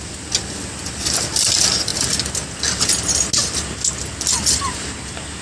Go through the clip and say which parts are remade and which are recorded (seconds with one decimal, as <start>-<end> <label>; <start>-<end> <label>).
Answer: 0.0-5.4 recorded